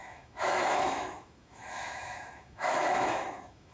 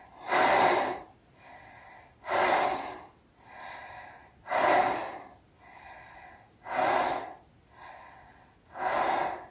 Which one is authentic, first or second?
second